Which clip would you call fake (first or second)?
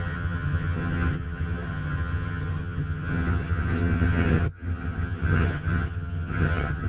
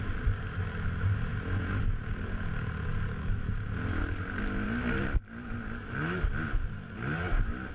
first